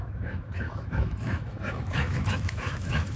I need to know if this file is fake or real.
fake